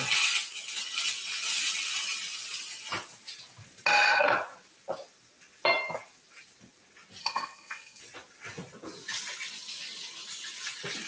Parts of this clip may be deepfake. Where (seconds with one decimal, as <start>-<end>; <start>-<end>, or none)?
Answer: 7.2-8.0